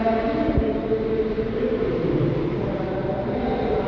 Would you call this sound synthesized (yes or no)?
no